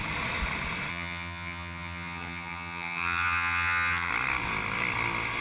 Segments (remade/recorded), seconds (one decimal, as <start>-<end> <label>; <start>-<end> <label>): 0.0-0.9 recorded; 0.9-4.1 remade; 4.1-5.4 recorded